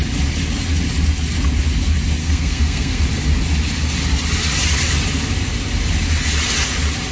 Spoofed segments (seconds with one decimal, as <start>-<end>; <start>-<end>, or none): 2.2-3.0